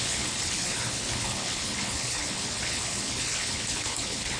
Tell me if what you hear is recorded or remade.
remade